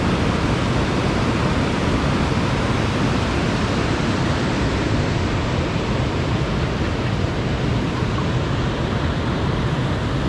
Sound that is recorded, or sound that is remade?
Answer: recorded